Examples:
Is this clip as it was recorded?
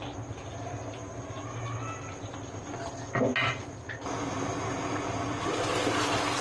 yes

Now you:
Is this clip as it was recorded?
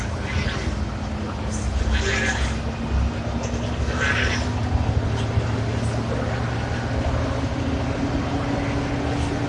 yes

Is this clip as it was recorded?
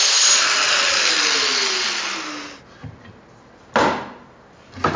yes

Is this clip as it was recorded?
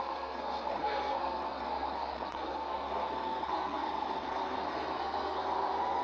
no